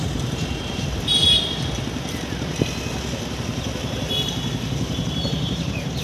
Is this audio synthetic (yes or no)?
yes